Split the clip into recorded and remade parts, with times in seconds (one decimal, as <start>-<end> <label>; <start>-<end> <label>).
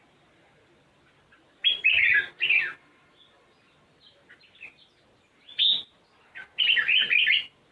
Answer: 0.0-7.7 recorded